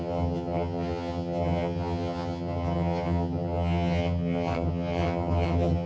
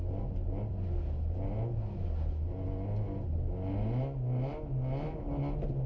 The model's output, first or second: first